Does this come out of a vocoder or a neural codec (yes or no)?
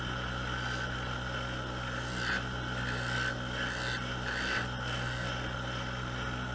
no